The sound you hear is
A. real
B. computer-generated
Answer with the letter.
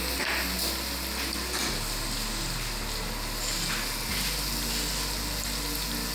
A